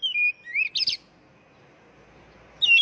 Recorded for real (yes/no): yes